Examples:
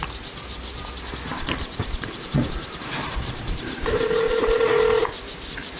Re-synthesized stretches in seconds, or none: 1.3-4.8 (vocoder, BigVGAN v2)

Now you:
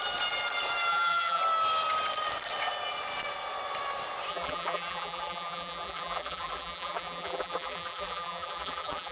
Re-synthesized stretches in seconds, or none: 0.9-1.4 (vocoder, BigVGAN v2); 4.3-9.1

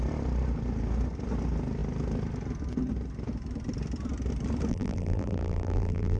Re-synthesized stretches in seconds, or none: 4.7-6.2 (vocoder, BigVGAN v2)

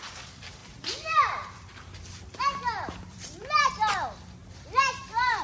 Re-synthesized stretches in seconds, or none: 0.6-3.7 (vocoder, BigVGAN v2); 4.4-5.4

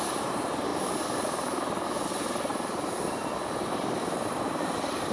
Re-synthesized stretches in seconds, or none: 0.0-0.7 (vocoder, BigVGAN v2); 2.1-2.5; 3.8-5.1